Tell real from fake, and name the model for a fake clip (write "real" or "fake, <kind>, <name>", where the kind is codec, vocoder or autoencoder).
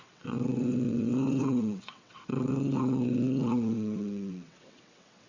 fake, vocoder, WaveNeXt